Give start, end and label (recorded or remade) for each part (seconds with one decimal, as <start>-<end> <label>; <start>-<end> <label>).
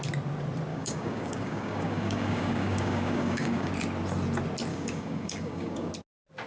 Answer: 0.0-0.7 recorded; 0.7-3.7 remade; 3.7-4.7 recorded; 4.7-5.9 remade; 5.9-6.5 recorded